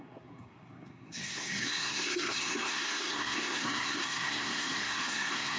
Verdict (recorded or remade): remade